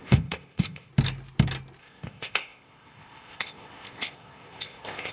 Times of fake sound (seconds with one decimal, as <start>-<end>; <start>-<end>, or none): 0.0-0.9; 1.8-5.1